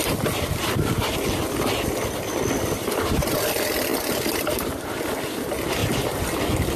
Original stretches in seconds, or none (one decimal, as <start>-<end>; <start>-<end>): 0.0-6.8